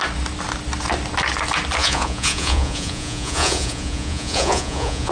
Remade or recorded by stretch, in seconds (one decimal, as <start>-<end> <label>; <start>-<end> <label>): 0.0-1.8 recorded; 1.8-5.1 remade